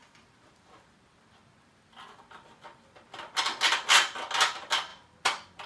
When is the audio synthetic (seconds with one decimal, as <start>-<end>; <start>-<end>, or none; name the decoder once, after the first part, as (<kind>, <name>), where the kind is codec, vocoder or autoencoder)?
0.0-3.4 (vocoder, BigVGAN v2)